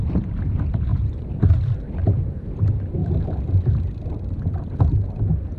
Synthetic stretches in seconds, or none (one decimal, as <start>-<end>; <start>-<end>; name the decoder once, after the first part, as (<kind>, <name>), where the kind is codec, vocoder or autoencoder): 0.9-1.6 (vocoder, BigVGAN v2); 2.0-2.6; 3.0-3.6